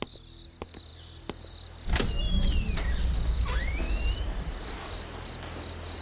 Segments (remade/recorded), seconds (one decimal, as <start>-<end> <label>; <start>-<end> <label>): 0.0-6.0 recorded